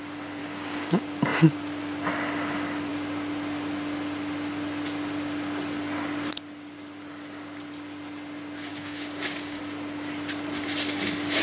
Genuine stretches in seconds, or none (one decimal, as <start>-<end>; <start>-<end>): 0.0-0.4; 0.9-8.7; 9.6-11.4

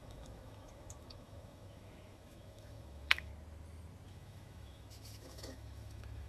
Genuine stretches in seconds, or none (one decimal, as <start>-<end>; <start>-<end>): 3.3-4.1

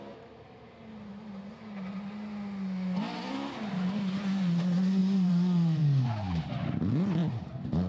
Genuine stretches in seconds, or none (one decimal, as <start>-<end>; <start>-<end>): 0.0-5.0; 6.5-7.9

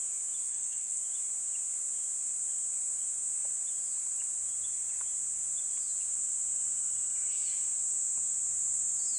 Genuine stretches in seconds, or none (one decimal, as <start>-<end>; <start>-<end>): 0.0-0.4; 1.0-9.2

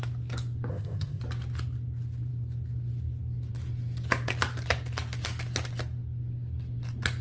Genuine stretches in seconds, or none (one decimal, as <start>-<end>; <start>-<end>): 0.0-0.7; 1.2-7.2

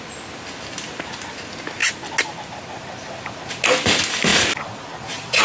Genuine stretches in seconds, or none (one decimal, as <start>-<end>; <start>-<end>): 0.0-5.4

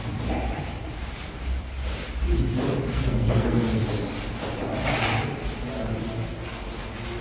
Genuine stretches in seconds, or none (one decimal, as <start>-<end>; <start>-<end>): 0.0-2.9; 3.8-7.2